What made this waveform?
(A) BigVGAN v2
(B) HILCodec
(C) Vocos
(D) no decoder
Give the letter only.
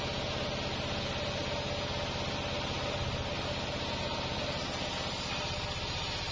D